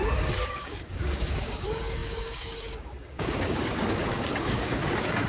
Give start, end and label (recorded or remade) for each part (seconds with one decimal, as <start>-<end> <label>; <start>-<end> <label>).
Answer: 0.0-5.3 remade